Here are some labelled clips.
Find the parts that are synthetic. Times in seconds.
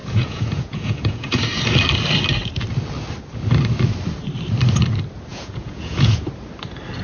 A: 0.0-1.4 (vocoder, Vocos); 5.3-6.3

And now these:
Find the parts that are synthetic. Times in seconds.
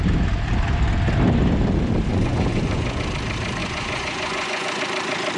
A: 2.1-3.0 (vocoder, Vocos); 3.6-4.8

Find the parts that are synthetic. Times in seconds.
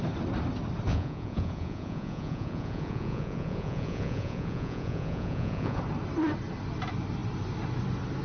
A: 0.9-5.8 (vocoder, Vocos)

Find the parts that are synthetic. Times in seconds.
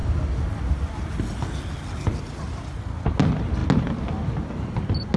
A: none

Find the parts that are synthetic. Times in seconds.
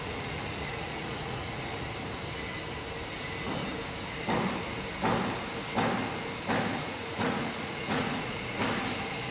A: 0.0-1.7 (vocoder, Vocos); 6.7-8.6